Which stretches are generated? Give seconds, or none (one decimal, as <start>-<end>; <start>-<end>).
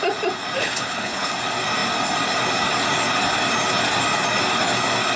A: 0.6-1.3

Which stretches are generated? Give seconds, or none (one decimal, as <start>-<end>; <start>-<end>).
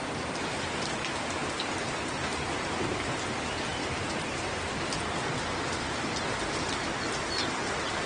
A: none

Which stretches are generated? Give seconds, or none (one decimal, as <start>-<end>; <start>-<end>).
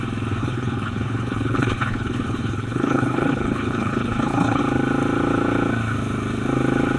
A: 0.4-4.6